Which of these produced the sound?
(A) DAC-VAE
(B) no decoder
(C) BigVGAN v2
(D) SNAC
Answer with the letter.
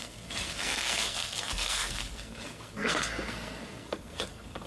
D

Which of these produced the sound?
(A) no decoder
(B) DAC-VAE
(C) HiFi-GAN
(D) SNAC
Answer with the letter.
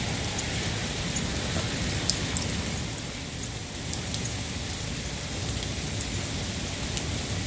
A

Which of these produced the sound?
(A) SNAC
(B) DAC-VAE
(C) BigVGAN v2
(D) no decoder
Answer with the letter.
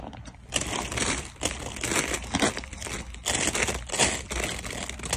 D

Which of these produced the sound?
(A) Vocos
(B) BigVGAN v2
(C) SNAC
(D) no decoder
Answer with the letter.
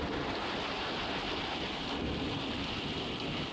D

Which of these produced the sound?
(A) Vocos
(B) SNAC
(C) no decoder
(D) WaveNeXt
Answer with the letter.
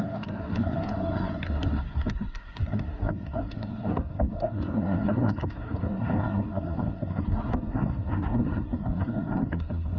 B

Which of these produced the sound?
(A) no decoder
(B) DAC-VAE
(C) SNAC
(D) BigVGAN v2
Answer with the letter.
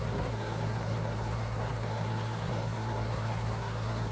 C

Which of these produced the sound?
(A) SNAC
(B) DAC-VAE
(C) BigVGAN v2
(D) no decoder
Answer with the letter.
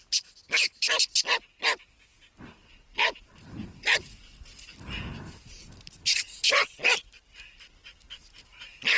D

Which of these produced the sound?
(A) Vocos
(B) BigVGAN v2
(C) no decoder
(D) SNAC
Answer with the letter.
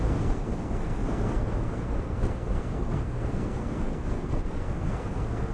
D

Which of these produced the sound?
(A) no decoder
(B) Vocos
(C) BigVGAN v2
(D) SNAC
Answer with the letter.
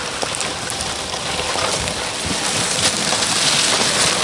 A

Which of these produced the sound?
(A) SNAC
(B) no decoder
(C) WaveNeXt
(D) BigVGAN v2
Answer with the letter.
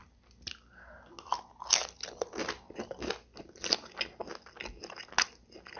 B